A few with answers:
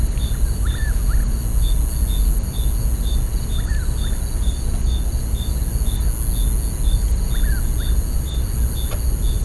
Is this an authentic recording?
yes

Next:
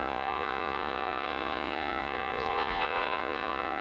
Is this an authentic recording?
no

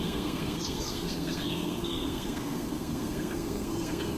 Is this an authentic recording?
no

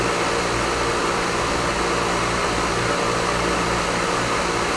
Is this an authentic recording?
yes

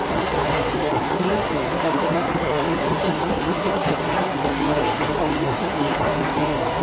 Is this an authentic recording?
no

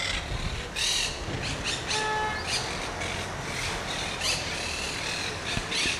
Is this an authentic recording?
yes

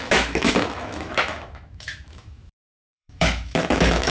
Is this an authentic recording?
no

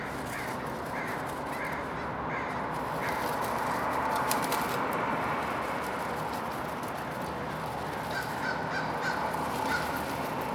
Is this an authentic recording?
yes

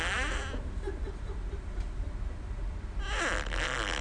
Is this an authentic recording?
yes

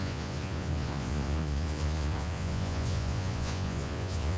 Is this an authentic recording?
no